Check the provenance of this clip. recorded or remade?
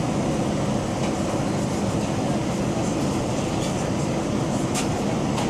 recorded